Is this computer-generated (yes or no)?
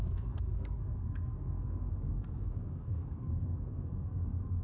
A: yes